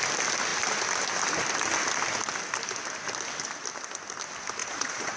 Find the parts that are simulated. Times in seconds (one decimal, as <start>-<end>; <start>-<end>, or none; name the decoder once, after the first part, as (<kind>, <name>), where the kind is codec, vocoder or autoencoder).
4.6-5.2 (vocoder, Vocos)